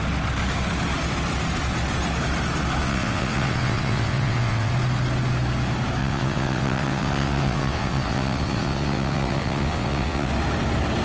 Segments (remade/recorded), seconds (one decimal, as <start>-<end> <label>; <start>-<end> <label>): 0.0-2.8 recorded; 2.8-4.7 remade; 4.7-6.0 recorded; 6.0-10.3 remade; 10.3-11.0 recorded